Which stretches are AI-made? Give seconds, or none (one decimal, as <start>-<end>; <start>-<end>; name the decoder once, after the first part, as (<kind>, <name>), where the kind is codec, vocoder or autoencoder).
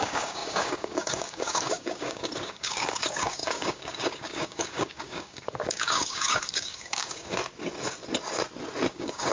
0.0-7.4 (codec, DAC); 8.9-9.3